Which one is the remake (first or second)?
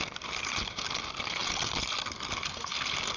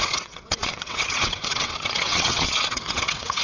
second